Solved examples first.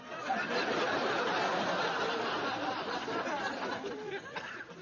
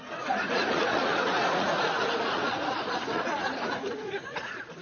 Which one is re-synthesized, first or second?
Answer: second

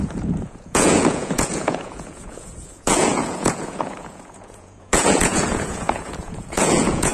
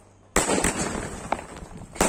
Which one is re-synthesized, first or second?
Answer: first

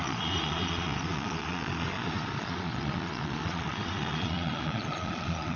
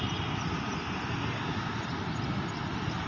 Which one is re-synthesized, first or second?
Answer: first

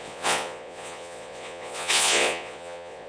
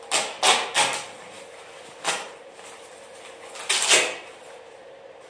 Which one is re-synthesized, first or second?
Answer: first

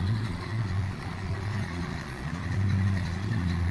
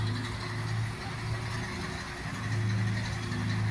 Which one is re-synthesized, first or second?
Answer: first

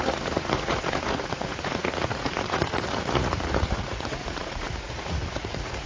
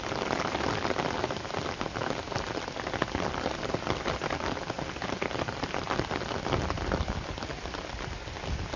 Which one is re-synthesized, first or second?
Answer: first